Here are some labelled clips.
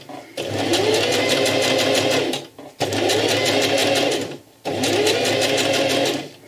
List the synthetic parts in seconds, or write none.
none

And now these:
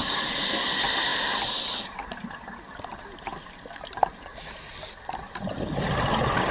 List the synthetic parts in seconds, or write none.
none

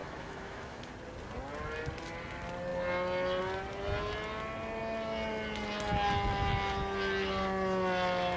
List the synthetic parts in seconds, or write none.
0.0-0.9

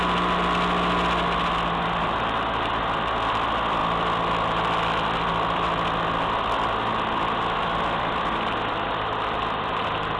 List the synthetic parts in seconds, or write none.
none

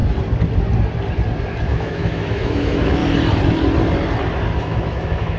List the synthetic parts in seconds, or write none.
1.6-3.0; 4.6-5.4